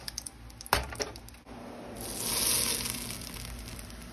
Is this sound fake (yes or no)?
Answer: no